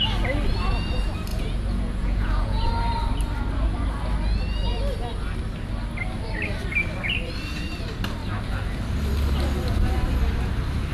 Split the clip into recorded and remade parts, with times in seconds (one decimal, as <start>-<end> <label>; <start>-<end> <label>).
0.0-1.3 recorded; 1.3-2.7 remade; 2.7-10.9 recorded